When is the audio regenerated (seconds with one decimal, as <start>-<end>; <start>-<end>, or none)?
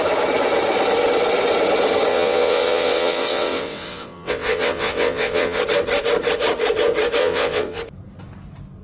2.1-5.6; 7.2-7.8